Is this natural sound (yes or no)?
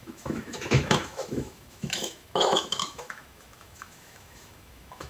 no